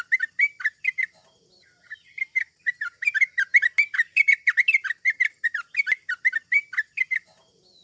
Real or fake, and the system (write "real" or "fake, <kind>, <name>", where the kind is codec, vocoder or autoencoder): real